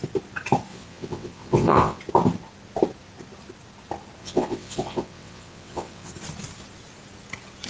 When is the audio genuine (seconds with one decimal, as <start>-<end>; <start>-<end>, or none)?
0.0-0.7; 2.0-4.2; 6.1-7.7